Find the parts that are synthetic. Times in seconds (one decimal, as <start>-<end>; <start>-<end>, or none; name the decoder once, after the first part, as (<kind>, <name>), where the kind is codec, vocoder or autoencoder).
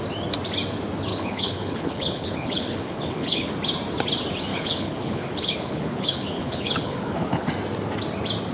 1.1-3.5 (codec, HILCodec); 4.5-7.5